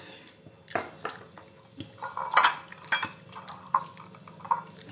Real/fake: real